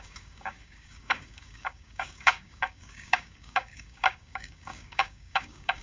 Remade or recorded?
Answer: remade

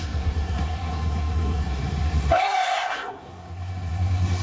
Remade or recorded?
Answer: remade